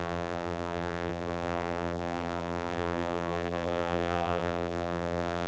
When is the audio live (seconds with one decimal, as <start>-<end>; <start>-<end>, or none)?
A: none